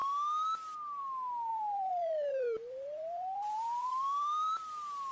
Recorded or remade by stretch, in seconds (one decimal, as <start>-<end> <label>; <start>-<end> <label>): 0.0-1.5 recorded; 1.5-4.6 remade; 4.6-5.1 recorded